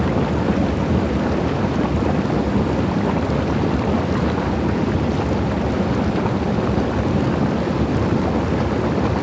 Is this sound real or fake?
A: real